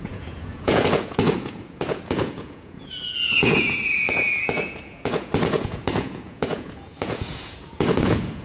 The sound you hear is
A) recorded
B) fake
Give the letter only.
B